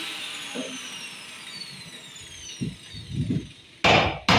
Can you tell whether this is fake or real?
real